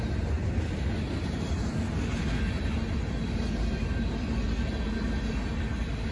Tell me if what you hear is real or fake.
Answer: real